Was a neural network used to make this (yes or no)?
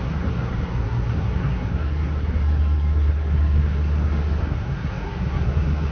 yes